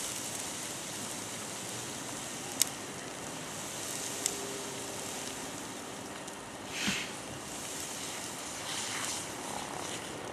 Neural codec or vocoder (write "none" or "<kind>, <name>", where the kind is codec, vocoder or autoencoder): none